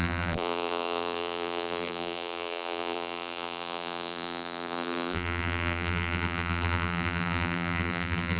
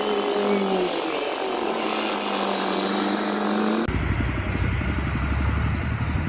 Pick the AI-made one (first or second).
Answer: first